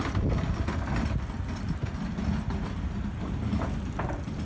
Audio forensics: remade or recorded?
recorded